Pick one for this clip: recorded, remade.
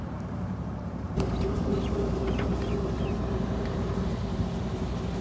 remade